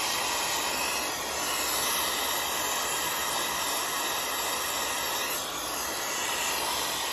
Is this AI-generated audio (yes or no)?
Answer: no